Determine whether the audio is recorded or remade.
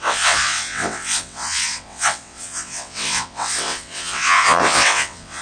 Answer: remade